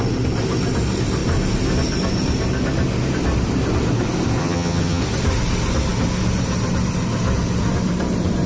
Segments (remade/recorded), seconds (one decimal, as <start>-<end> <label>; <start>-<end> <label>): 0.0-4.4 recorded; 4.4-5.0 remade; 5.0-8.5 recorded